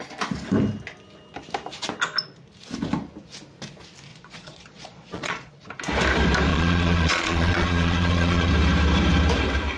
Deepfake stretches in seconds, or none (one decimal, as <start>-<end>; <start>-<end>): 4.1-5.5; 6.5-8.5